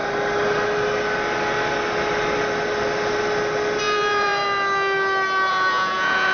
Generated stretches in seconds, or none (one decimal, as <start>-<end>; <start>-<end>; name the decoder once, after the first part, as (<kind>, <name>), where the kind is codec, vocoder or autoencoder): 3.8-4.4 (vocoder, Vocos); 5.5-6.3